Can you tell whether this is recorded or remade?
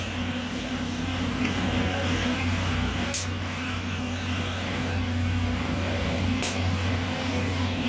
remade